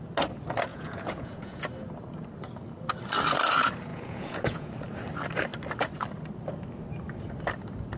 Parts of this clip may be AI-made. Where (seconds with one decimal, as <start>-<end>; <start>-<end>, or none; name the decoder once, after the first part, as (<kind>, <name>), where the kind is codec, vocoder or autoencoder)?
0.7-1.6 (vocoder, Vocos); 3.9-4.7